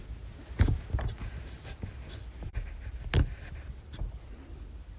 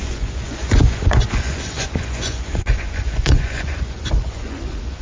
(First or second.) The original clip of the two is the first